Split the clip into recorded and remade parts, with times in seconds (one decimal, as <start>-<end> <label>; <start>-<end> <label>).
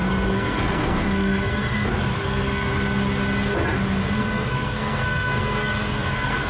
0.0-2.7 remade; 2.7-4.2 recorded; 4.2-6.5 remade